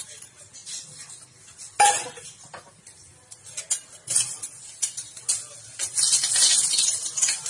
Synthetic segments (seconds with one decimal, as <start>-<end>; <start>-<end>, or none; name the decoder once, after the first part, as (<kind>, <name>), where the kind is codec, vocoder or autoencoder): 0.0-0.6 (vocoder, BigVGAN v2); 2.2-3.1; 5.8-7.5